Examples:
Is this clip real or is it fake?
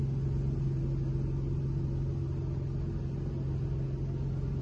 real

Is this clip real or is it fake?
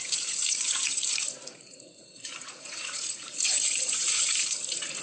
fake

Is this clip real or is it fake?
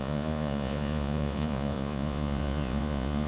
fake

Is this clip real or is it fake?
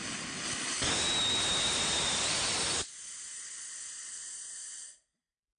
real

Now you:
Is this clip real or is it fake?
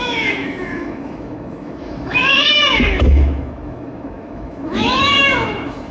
fake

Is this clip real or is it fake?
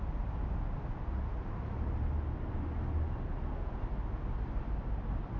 real